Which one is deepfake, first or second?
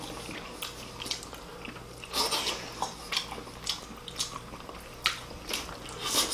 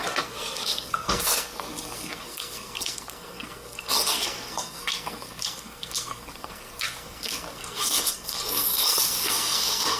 second